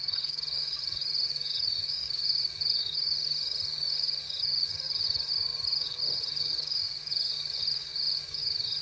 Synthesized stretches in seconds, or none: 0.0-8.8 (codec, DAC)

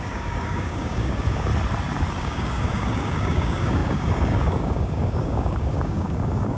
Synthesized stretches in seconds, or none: 0.0-1.5 (codec, DAC); 2.2-6.6

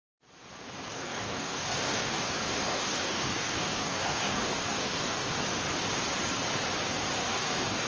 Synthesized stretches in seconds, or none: 0.9-5.3 (codec, DAC); 7.2-7.9

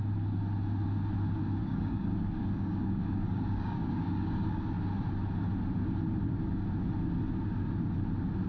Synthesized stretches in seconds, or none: 1.6-4.6 (codec, DAC)